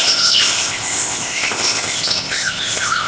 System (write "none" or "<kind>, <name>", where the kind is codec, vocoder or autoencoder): codec, ZipCodec